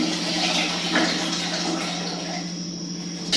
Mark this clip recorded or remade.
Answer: recorded